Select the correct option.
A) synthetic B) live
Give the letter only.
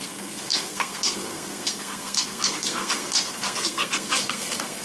A